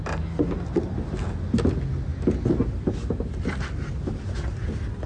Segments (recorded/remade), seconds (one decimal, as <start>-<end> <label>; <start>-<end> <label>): 0.0-5.1 recorded